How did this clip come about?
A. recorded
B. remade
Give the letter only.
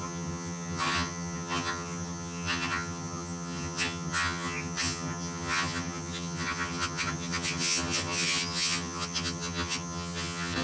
B